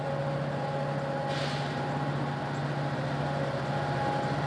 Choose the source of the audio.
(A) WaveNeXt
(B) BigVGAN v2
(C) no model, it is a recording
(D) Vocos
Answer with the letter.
C